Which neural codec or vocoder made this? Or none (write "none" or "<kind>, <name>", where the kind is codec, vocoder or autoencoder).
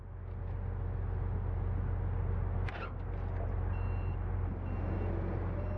none